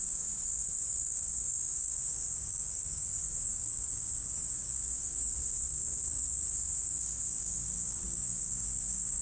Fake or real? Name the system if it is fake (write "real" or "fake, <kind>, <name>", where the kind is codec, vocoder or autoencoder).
fake, codec, DAC